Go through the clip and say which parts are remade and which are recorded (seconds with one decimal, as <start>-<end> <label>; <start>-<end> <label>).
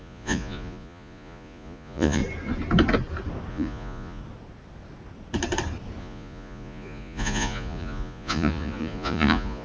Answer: 0.0-2.2 remade; 2.2-3.5 recorded; 3.5-4.2 remade; 4.2-6.0 recorded; 6.0-9.6 remade